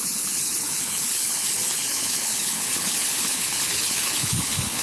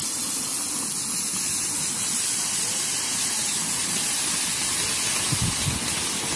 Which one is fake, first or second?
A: first